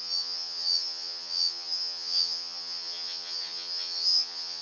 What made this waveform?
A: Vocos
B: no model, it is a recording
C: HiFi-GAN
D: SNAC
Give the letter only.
C